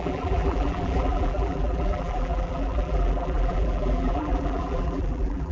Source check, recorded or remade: remade